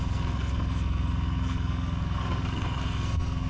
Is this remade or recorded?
remade